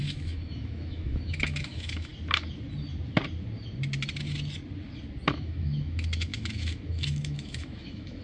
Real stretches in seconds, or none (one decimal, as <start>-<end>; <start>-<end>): 2.1-5.3